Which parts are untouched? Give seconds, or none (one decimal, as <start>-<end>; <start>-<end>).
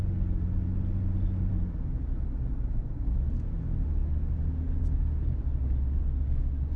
0.0-6.8